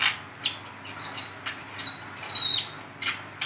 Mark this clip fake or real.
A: real